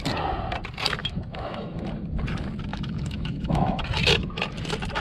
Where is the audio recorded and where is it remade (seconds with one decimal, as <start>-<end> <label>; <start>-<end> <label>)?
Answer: 0.0-1.0 recorded; 1.0-1.8 remade; 1.8-2.7 recorded; 2.7-3.8 remade; 3.8-5.0 recorded